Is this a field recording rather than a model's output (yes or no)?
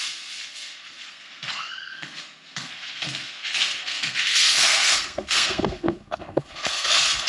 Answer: no